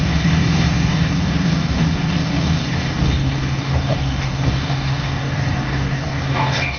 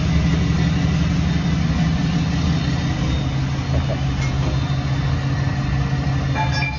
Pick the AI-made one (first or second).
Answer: first